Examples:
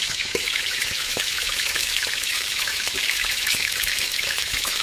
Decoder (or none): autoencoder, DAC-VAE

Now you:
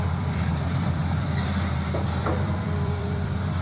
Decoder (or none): vocoder, BigVGAN v2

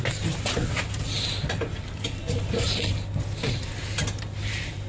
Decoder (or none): none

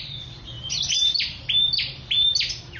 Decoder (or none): none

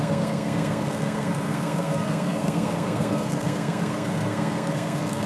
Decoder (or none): codec, SNAC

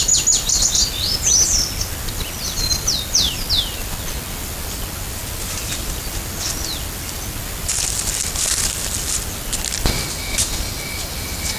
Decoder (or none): none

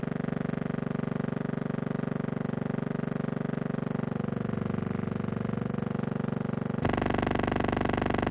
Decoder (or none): none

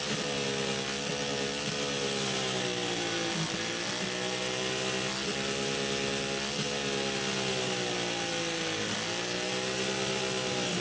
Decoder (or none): none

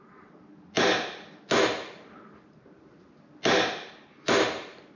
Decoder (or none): none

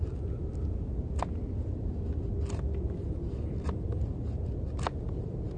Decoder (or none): none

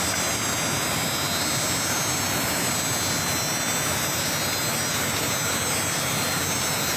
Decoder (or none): none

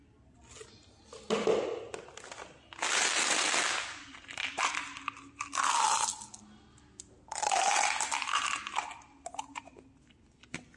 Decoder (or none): none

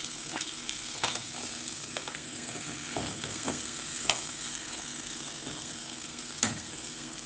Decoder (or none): codec, SNAC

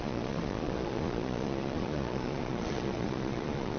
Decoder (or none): vocoder, Vocos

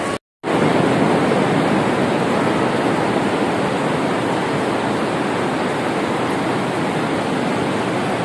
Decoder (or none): none